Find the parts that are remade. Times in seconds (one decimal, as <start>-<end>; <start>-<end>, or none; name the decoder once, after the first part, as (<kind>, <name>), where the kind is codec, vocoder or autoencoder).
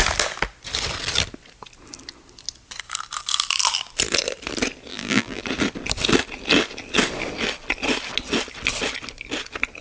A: 4.9-5.4 (vocoder, BigVGAN v2)